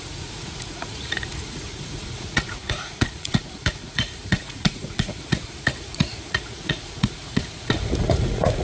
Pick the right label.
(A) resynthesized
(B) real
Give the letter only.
A